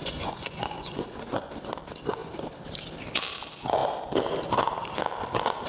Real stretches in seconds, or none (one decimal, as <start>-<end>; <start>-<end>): 1.5-5.7